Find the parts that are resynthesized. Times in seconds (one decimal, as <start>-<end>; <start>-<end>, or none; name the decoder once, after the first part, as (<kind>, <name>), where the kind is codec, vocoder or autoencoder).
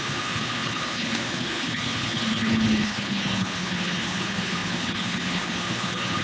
0.0-6.2 (codec, HILCodec)